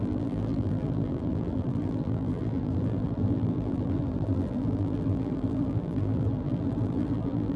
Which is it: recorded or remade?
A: remade